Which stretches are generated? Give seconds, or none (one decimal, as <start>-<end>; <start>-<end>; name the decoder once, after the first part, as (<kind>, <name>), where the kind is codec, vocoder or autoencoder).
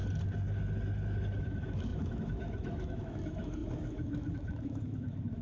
1.4-5.4 (autoencoder, DAC-VAE)